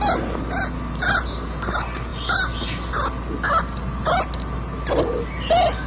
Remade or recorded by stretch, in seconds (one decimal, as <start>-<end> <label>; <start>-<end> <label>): 0.0-5.9 recorded

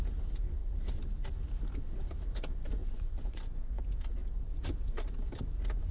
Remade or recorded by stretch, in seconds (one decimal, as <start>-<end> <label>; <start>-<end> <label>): 0.0-2.8 recorded; 2.8-3.8 remade; 3.8-5.9 recorded

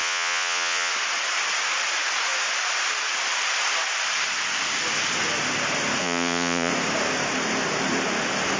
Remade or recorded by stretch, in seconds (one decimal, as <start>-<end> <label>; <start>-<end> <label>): 0.0-0.9 remade; 0.9-6.0 recorded; 6.0-6.7 remade; 6.7-8.6 recorded

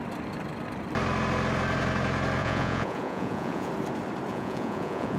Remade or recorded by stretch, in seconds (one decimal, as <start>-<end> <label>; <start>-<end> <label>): 0.0-2.4 recorded; 2.4-3.7 remade; 3.7-4.3 recorded; 4.3-5.2 remade